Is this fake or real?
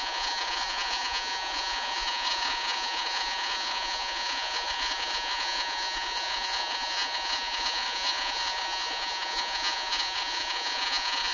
fake